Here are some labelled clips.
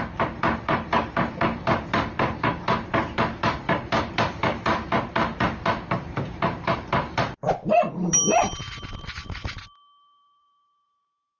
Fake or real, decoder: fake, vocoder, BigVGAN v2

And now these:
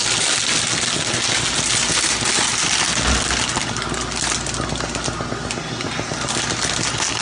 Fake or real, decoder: real